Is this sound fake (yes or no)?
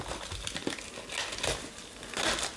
no